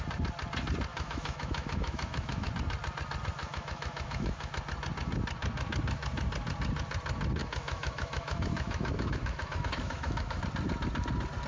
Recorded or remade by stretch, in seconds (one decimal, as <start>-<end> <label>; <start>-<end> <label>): 0.0-0.9 recorded; 0.9-2.5 remade; 2.5-3.4 recorded; 3.4-4.5 remade; 4.5-7.4 recorded; 7.4-10.4 remade; 10.4-11.5 recorded